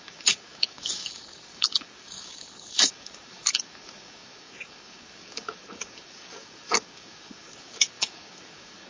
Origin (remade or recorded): remade